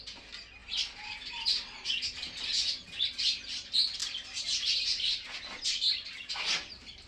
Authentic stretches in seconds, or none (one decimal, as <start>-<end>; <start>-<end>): 0.0-4.0; 6.1-7.1